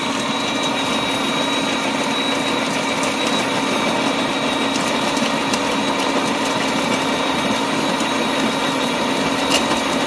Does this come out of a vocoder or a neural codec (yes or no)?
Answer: no